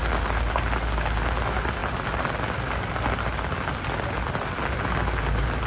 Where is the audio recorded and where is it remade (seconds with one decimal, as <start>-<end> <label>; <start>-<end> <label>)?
0.0-5.7 recorded